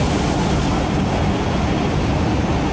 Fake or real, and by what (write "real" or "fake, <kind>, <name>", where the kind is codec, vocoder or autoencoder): real